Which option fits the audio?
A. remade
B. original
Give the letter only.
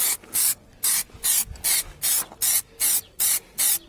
B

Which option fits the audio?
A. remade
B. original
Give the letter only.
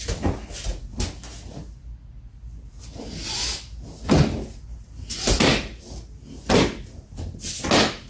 B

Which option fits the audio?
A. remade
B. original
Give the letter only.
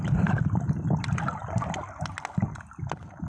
B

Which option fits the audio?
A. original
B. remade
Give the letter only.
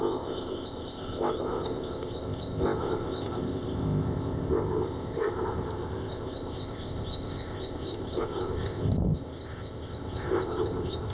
B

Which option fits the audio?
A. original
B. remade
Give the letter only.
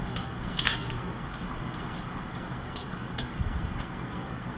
B